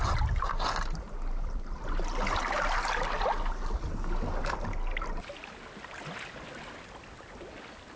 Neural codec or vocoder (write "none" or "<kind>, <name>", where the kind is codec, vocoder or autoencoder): none